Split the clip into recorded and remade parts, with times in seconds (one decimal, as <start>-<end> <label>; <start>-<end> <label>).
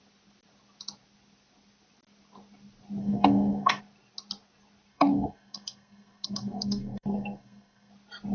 0.0-3.0 recorded; 3.0-3.8 remade; 3.8-4.9 recorded; 4.9-7.9 remade; 7.9-8.3 recorded